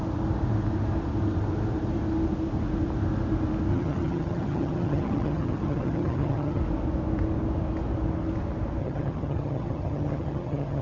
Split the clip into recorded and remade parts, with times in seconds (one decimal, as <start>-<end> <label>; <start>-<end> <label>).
0.0-3.7 recorded; 3.7-6.6 remade; 6.6-8.8 recorded; 8.8-10.8 remade